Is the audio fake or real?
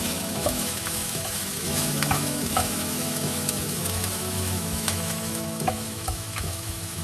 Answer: fake